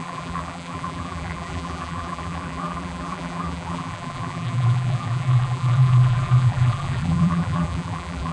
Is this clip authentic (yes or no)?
no